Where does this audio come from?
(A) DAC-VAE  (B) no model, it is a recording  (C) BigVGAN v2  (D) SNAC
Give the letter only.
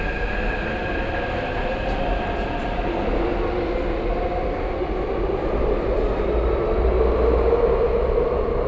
B